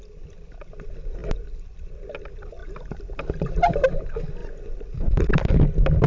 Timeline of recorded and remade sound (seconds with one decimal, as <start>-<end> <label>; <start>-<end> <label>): 0.0-2.6 recorded; 2.6-3.5 remade; 3.5-6.1 recorded